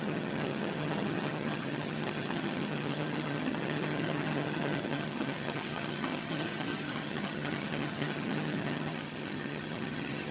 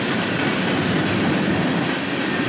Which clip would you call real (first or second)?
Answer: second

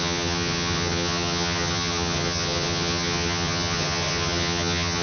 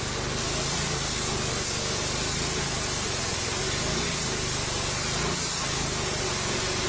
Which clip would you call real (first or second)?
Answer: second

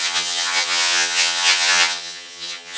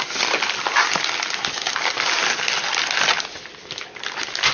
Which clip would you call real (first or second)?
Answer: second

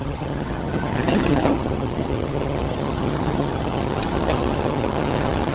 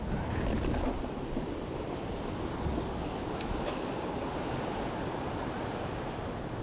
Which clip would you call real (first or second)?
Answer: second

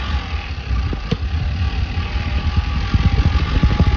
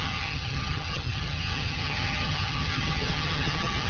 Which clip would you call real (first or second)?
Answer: first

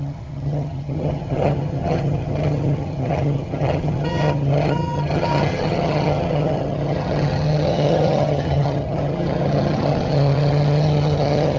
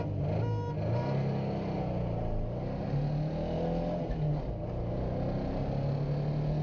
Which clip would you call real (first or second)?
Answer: second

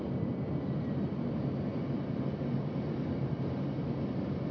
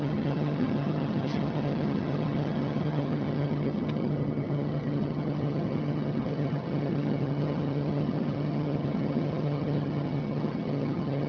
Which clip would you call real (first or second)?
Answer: first